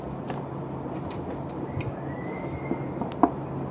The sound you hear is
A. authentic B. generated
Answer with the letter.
A